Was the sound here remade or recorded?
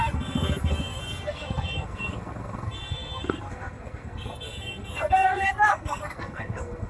remade